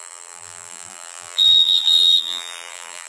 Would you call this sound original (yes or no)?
no